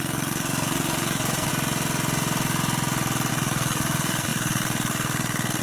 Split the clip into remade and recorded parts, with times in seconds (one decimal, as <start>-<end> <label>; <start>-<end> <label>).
0.0-1.5 remade; 1.5-3.3 recorded; 3.3-5.6 remade